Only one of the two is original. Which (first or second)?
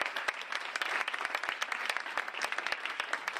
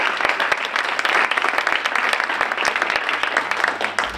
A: second